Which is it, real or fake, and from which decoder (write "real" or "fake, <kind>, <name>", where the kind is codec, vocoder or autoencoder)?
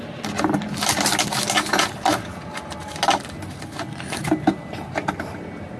real